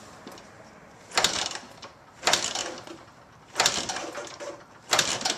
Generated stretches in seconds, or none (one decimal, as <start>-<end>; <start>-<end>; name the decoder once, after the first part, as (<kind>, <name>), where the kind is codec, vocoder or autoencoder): 2.6-5.4 (vocoder, BigVGAN v2)